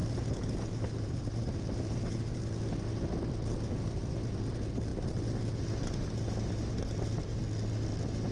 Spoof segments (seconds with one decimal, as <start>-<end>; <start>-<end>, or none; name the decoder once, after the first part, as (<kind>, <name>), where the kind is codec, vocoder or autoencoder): 0.0-2.4 (vocoder, BigVGAN v2)